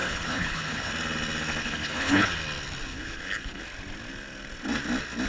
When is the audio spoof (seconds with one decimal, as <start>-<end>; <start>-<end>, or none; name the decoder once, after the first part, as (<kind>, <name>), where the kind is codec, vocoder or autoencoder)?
0.0-0.9 (codec, HILCodec); 1.6-2.3; 2.9-3.6